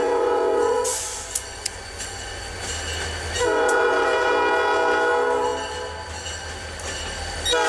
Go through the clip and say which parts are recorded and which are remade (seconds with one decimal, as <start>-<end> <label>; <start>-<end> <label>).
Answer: 0.0-2.7 remade; 2.7-3.4 recorded; 3.4-4.3 remade; 4.3-7.7 recorded